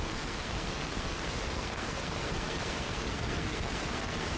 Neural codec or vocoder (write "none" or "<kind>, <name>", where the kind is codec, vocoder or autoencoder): codec, SNAC